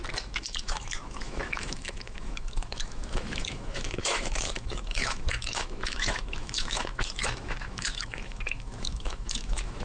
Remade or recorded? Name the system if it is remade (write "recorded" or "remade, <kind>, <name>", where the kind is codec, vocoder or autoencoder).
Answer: remade, autoencoder, DAC-VAE